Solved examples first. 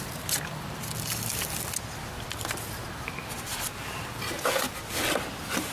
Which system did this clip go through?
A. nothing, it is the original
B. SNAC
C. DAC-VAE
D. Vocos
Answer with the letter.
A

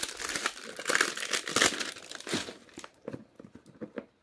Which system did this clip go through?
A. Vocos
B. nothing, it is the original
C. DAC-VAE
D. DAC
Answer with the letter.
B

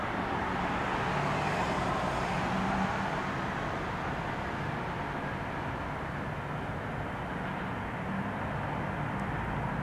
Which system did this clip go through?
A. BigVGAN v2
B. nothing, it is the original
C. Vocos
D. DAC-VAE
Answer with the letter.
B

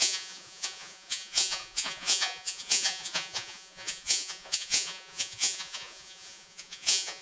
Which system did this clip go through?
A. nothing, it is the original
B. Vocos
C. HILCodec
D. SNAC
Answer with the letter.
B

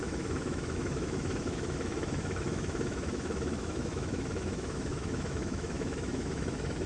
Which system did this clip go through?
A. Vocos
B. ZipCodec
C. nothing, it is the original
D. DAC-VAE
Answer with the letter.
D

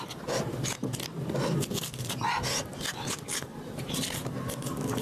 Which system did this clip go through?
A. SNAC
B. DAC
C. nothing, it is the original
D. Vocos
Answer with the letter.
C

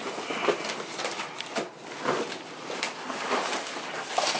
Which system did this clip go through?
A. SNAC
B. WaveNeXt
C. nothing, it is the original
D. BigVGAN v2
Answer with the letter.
C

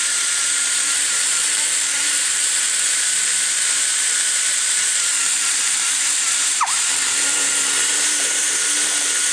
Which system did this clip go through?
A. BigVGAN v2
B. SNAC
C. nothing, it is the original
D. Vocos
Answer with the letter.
A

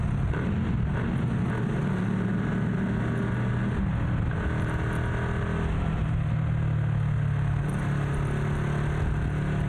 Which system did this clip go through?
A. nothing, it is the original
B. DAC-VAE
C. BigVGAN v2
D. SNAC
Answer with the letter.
A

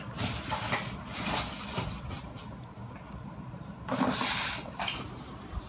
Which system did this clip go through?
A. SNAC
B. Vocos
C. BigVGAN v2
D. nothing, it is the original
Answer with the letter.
D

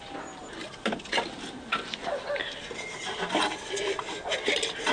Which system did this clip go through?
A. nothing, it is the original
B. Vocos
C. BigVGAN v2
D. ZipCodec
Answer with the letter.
A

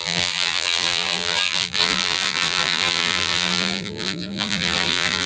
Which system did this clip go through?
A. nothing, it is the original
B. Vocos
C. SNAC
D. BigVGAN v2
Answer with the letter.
D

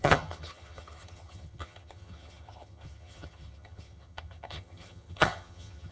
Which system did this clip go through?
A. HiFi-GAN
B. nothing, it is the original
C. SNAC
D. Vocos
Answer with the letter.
A